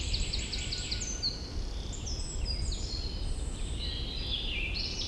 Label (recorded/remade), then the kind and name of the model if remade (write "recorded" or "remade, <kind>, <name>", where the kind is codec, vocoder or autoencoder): recorded